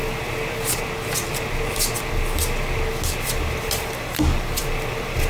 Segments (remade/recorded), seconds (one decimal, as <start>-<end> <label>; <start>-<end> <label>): 0.0-3.2 recorded; 3.2-5.3 remade